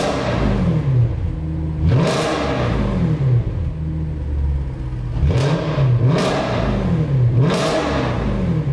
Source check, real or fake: real